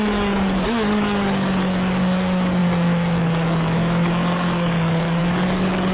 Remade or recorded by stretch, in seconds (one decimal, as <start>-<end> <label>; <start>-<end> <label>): 0.0-5.9 remade